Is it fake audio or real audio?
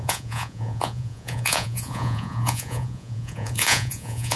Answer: fake